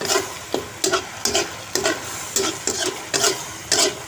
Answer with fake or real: real